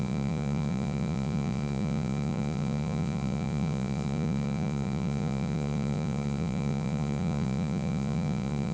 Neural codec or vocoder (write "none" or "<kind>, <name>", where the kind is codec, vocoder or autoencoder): vocoder, Vocos